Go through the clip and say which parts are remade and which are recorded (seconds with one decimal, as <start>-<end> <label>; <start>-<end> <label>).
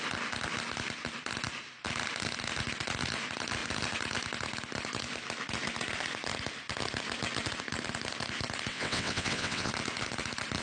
0.0-8.7 recorded; 8.7-9.7 remade; 9.7-10.6 recorded